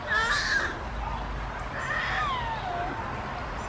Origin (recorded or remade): recorded